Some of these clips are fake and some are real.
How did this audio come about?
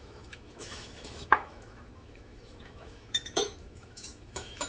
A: fake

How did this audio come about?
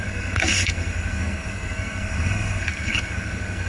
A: fake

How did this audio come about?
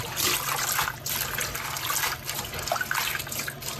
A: real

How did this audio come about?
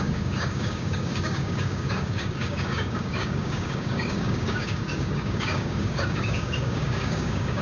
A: fake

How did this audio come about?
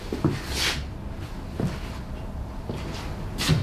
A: real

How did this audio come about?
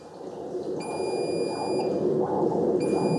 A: real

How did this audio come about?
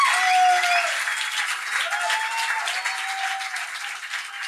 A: real